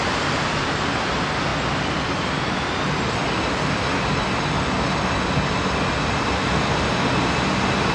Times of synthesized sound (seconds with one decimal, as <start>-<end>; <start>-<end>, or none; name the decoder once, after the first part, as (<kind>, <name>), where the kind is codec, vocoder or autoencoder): none

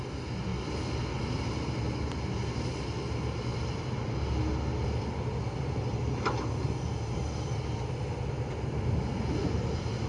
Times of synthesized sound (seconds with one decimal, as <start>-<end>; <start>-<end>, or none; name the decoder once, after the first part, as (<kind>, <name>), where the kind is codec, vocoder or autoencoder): none

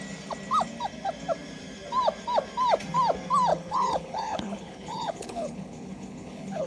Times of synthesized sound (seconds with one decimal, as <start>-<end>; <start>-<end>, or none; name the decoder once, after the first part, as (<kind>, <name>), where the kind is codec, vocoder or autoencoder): 3.5-6.7 (codec, HILCodec)

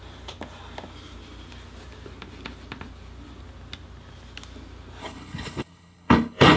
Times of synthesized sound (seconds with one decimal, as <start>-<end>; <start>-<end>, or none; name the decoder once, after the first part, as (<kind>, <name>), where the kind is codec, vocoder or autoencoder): 5.0-6.6 (codec, HILCodec)